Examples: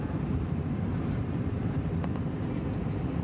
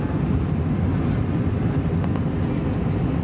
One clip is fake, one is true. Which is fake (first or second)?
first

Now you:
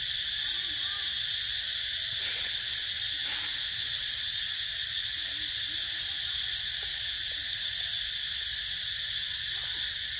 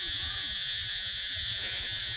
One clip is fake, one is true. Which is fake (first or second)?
second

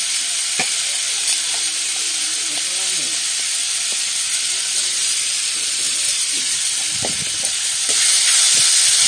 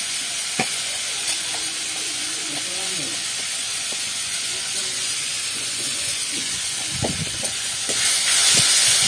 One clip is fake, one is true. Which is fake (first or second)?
second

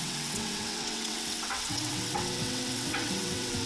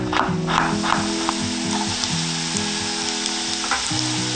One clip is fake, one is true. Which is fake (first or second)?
first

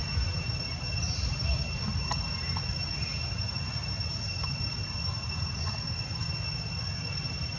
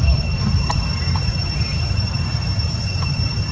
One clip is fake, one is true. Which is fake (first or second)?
second